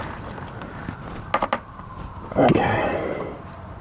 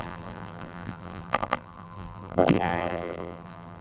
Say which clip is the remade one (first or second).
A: second